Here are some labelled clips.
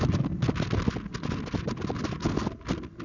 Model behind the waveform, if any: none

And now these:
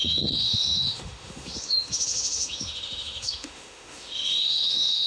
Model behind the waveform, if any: autoencoder, DAC-VAE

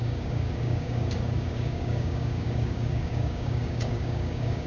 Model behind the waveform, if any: codec, DAC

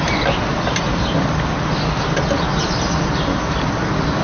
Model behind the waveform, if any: none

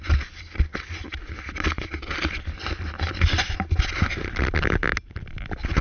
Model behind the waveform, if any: none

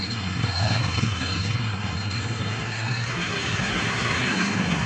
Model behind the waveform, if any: codec, SNAC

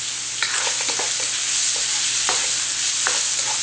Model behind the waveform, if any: none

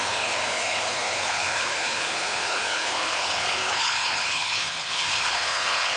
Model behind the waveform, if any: codec, HILCodec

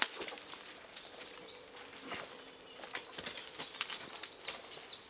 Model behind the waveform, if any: none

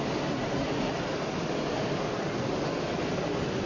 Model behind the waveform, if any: none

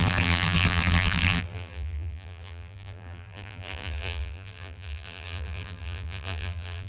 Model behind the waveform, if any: vocoder, BigVGAN v2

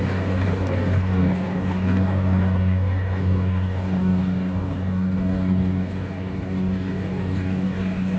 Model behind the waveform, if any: codec, DAC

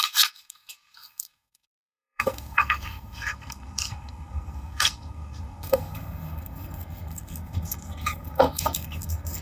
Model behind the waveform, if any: codec, SNAC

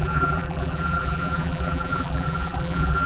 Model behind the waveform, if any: vocoder, BigVGAN v2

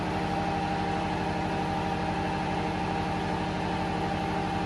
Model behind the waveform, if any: none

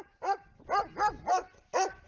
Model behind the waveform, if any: none